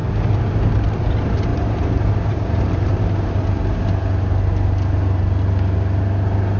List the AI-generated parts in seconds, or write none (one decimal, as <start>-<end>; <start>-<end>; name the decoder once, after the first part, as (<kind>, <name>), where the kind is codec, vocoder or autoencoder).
1.5-3.0 (vocoder, BigVGAN v2)